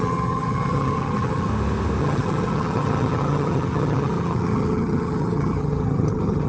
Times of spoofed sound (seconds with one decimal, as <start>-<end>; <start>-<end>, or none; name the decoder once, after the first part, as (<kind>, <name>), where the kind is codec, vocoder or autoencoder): 0.0-1.5 (vocoder, HiFi-GAN); 2.0-6.5